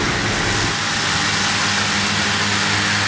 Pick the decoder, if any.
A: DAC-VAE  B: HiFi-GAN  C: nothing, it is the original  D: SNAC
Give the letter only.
C